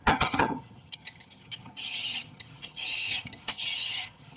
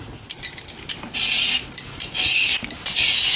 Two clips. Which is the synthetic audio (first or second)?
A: first